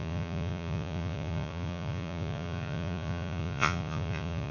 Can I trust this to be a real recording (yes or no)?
no